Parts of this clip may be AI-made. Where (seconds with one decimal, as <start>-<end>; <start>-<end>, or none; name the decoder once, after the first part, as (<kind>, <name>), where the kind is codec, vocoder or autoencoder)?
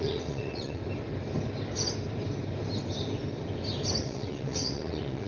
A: 0.0-0.8 (vocoder, WaveNeXt); 4.0-5.3